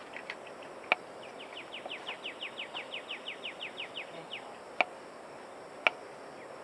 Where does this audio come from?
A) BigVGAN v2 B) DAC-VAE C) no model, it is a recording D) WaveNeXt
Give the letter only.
C